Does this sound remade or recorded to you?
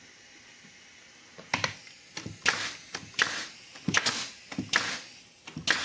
recorded